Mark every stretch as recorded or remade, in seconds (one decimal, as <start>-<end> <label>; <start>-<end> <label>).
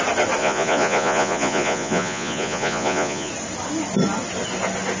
0.0-0.4 recorded; 0.4-3.3 remade; 3.3-5.0 recorded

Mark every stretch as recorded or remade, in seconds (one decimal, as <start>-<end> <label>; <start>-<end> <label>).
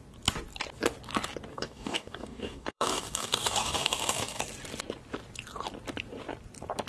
0.0-1.5 recorded; 1.5-4.4 remade; 4.4-6.9 recorded